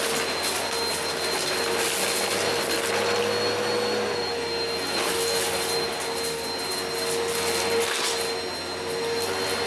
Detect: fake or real real